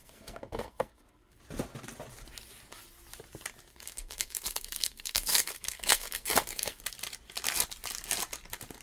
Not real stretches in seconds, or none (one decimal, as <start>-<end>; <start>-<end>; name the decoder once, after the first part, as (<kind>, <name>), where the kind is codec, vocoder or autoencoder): 0.0-1.4 (codec, SNAC); 3.7-6.8